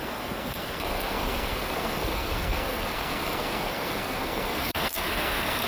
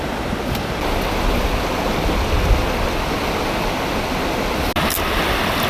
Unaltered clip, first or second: second